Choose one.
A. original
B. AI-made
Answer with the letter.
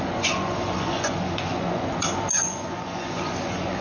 B